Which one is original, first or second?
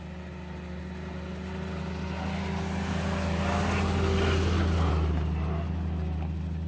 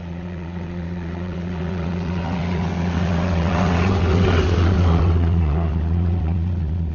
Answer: first